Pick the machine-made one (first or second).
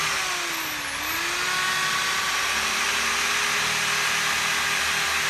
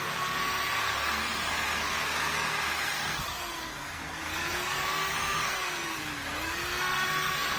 second